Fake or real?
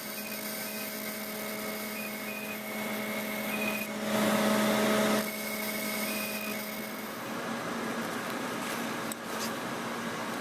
real